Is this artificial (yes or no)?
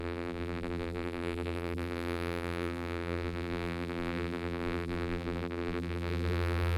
yes